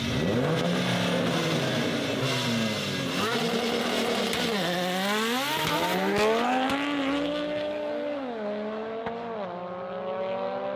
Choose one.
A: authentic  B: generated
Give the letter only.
A